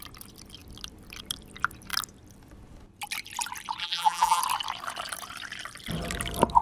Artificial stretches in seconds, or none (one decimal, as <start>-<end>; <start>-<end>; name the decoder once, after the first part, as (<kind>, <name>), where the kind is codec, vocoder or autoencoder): 3.8-4.4 (vocoder, BigVGAN v2)